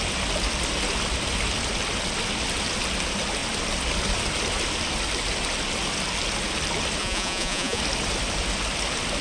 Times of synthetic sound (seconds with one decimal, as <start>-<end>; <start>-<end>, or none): 7.0-7.8